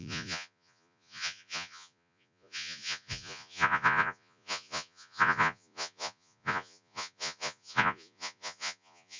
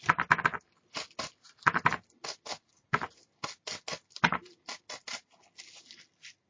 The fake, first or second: first